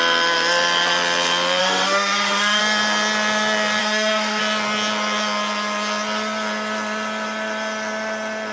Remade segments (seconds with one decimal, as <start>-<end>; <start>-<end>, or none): 1.6-2.6; 3.8-4.4